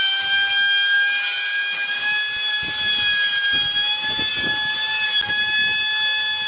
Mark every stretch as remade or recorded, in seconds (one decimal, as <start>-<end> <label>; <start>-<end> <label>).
0.0-6.5 recorded